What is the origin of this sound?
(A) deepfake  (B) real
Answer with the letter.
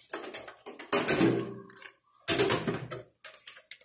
B